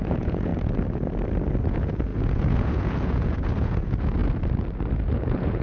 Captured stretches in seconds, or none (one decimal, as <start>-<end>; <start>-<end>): 0.5-1.7; 4.2-5.1